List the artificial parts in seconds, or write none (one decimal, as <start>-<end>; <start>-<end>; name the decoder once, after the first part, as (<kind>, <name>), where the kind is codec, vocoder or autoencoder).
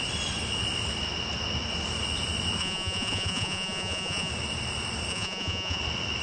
2.6-4.3 (vocoder, Vocos); 5.1-5.8